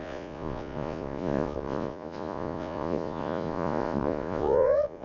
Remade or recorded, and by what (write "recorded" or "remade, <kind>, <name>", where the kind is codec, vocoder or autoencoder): remade, vocoder, Vocos